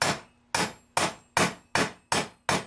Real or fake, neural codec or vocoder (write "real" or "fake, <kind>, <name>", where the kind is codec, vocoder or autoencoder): real